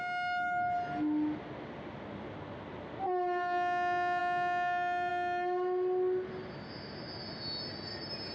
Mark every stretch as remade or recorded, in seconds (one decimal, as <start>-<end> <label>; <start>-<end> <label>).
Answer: 0.0-8.3 recorded